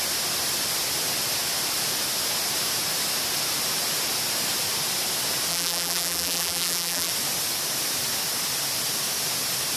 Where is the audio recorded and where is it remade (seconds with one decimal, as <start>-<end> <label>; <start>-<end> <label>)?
0.0-5.5 recorded; 5.5-7.1 remade; 7.1-9.8 recorded